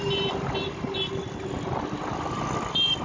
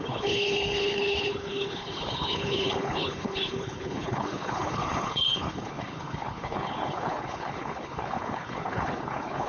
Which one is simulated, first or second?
second